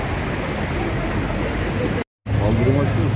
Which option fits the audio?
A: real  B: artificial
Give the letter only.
A